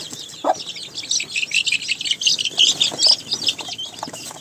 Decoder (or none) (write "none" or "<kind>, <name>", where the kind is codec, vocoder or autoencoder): none